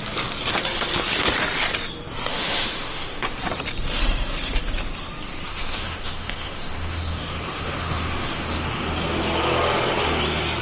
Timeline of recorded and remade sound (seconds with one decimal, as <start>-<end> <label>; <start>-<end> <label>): 0.0-2.3 recorded; 2.3-3.4 remade; 3.4-5.5 recorded; 5.5-8.9 remade; 8.9-10.6 recorded

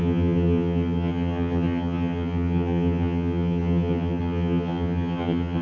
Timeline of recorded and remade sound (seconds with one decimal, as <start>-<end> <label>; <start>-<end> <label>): 0.0-5.6 remade

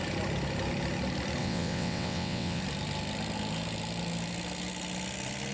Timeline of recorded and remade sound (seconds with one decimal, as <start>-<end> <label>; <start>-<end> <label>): 0.0-1.4 recorded; 1.4-2.6 remade; 2.6-5.5 recorded

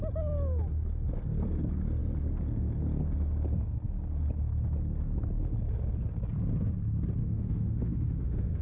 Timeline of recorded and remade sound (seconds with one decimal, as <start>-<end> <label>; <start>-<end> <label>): 0.0-7.2 recorded; 7.2-8.6 remade

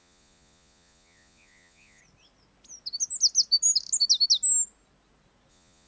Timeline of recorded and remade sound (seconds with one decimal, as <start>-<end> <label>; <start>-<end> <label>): 0.0-2.0 remade; 2.0-5.5 recorded; 5.5-5.9 remade

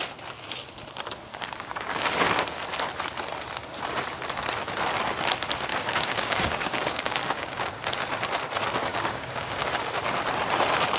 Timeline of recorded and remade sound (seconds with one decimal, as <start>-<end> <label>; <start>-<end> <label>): 0.0-1.3 recorded; 1.3-2.1 remade; 2.1-5.7 recorded; 5.7-7.7 remade; 7.7-8.9 recorded; 8.9-9.6 remade; 9.6-11.0 recorded

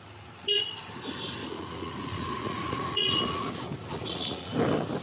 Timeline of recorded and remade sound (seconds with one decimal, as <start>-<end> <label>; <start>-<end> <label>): 0.0-1.4 recorded; 1.4-3.5 remade; 3.5-3.9 recorded; 3.9-4.5 remade; 4.5-5.0 recorded